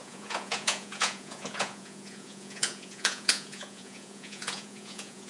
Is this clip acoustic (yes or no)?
no